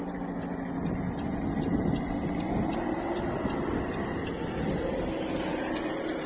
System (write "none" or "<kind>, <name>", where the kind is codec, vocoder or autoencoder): none